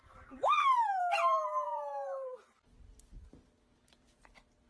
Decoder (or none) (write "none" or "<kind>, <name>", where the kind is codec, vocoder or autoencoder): none